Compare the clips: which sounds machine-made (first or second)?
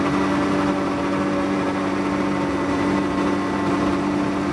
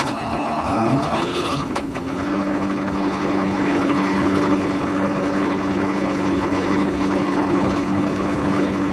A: second